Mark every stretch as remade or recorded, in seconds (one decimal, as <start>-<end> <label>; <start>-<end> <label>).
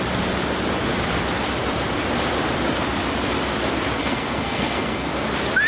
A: 0.0-4.0 recorded; 4.0-5.1 remade; 5.1-5.7 recorded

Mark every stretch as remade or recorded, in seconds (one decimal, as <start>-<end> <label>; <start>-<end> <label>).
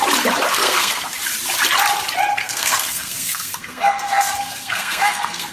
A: 0.0-0.5 recorded; 0.5-1.0 remade; 1.0-2.4 recorded; 2.4-5.5 remade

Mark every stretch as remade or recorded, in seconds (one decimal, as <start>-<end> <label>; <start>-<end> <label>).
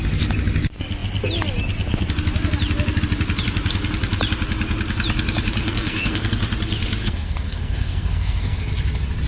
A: 0.0-5.6 recorded; 5.6-6.3 remade; 6.3-7.0 recorded; 7.0-8.7 remade; 8.7-9.3 recorded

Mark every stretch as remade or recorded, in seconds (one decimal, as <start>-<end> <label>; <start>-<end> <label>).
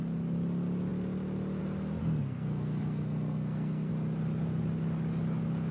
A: 0.0-2.0 recorded; 2.0-3.9 remade; 3.9-5.7 recorded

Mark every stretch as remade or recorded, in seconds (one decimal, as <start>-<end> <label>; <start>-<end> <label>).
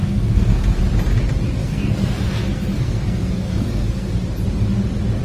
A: 0.0-0.8 remade; 0.8-1.6 recorded; 1.6-4.1 remade; 4.1-5.2 recorded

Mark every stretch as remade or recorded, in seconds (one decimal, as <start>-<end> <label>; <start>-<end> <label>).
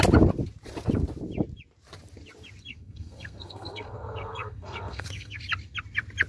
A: 0.0-2.7 recorded; 2.7-5.4 remade; 5.4-6.3 recorded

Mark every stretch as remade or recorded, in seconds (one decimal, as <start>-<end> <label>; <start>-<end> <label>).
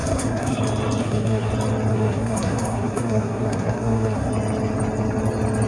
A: 0.0-0.6 remade; 0.6-1.0 recorded; 1.0-1.5 remade; 1.5-1.9 recorded; 1.9-4.3 remade; 4.3-5.7 recorded